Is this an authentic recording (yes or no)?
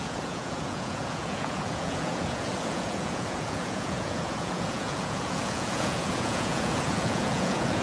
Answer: no